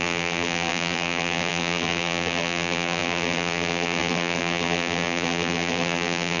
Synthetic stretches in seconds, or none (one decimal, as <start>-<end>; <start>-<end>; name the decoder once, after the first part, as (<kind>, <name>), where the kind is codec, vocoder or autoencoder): 0.0-6.4 (vocoder, BigVGAN v2)